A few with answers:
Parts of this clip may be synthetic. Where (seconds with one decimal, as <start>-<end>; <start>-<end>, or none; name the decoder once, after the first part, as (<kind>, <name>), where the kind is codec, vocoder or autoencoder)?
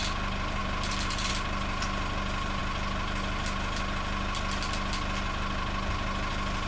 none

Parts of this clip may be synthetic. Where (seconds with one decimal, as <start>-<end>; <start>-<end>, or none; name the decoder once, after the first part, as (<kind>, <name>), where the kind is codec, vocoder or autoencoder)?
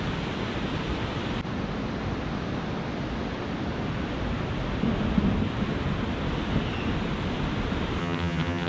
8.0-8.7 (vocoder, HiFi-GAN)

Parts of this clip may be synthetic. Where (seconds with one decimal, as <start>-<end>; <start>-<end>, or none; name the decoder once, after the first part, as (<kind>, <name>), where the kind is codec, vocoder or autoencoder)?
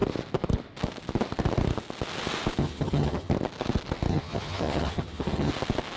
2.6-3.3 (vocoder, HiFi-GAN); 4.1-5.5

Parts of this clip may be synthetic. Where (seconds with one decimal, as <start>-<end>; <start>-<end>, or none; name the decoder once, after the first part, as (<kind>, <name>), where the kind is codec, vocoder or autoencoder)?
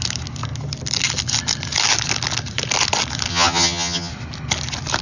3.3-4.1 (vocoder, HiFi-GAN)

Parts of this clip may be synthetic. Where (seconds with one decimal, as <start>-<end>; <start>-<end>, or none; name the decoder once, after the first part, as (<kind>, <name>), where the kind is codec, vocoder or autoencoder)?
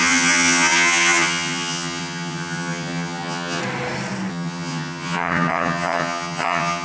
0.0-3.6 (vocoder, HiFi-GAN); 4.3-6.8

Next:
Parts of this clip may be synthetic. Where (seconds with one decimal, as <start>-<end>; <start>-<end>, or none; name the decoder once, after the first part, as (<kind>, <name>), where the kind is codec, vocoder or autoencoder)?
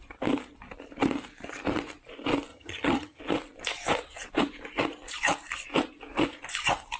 2.5-3.2 (vocoder, HiFi-GAN)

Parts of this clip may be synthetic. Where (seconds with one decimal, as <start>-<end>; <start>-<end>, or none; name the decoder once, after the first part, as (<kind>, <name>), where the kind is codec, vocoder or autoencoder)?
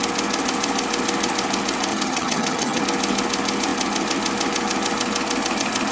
1.9-2.8 (vocoder, HiFi-GAN)